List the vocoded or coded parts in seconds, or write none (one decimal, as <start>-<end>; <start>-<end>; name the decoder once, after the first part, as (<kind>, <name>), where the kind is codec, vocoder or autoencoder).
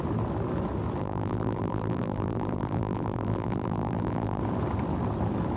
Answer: 1.0-4.4 (vocoder, BigVGAN v2)